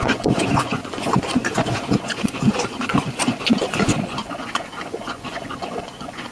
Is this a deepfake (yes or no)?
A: yes